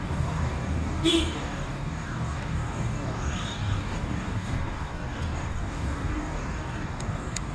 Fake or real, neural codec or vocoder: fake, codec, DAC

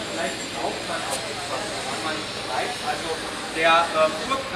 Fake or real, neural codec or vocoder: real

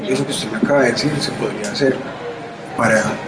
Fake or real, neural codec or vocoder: real